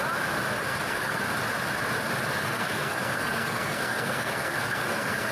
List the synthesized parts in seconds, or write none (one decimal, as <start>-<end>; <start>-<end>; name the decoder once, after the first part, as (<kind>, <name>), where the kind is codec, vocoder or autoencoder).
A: 0.6-1.2 (codec, SNAC); 2.4-5.3